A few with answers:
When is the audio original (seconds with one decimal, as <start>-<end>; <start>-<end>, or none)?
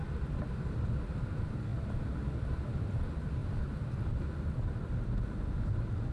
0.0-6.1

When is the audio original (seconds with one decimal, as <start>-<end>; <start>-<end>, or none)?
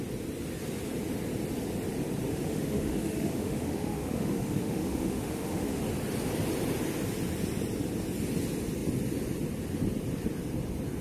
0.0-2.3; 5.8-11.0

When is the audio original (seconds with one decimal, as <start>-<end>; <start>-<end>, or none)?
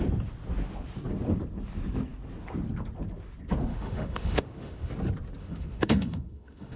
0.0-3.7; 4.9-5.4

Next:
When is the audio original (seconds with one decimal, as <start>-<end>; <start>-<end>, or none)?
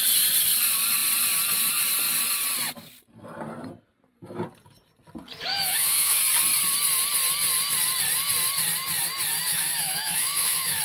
0.0-5.5; 6.2-9.5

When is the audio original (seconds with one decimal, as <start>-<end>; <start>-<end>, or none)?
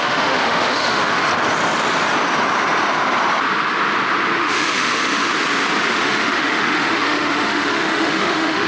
1.2-4.4; 5.3-5.9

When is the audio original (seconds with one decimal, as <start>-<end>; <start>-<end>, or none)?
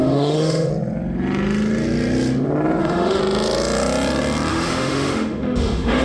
0.7-2.8; 3.2-4.5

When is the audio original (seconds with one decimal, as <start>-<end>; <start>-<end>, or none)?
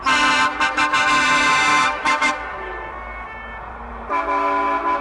0.0-1.7; 2.3-5.0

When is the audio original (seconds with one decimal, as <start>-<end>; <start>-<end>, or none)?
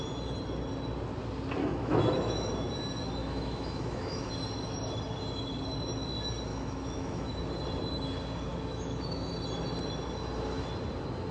0.0-1.6; 2.5-3.2; 4.3-6.5; 7.3-8.5; 9.3-11.3